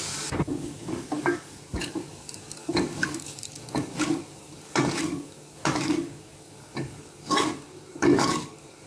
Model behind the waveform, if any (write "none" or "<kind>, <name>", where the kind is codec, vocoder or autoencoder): codec, DAC